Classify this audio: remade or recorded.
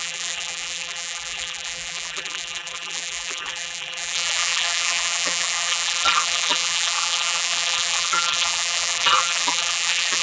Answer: remade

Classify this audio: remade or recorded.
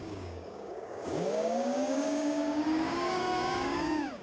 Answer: remade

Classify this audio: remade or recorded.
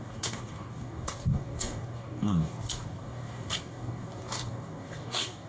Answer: remade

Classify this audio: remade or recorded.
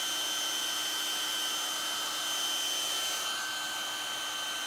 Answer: recorded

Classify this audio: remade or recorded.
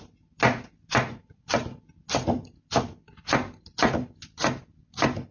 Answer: recorded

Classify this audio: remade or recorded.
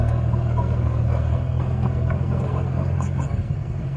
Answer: remade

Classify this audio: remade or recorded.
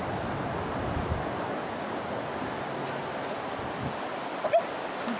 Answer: recorded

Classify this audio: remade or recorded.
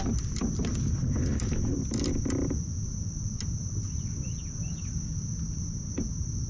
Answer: recorded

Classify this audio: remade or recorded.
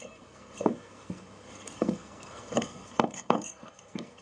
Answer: remade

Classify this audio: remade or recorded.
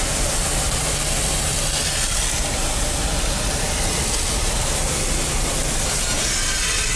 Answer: recorded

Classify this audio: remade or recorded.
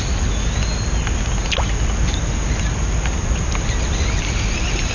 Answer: recorded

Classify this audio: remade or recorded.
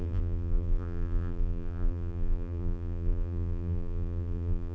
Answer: remade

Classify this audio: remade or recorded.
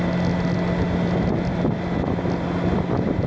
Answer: recorded